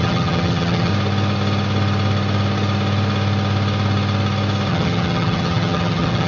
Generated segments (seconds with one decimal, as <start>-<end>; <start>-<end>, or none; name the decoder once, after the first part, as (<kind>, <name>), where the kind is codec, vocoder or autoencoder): 0.0-0.9 (vocoder, HiFi-GAN); 4.7-6.3